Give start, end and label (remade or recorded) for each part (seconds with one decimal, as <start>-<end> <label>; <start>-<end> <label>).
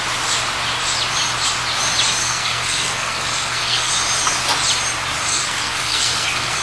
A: 0.0-2.2 recorded; 2.2-3.9 remade; 3.9-5.3 recorded; 5.3-6.6 remade